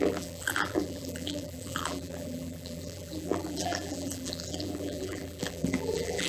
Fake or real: fake